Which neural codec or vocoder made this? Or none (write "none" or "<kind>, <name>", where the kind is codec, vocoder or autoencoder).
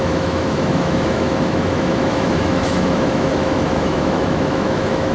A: autoencoder, DAC-VAE